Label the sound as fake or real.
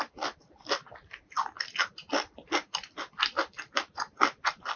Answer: real